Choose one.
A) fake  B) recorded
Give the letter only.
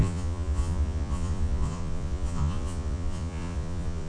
A